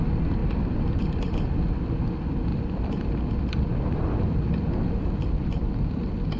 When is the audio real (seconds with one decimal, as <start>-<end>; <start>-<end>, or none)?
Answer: 0.0-0.4; 1.0-2.5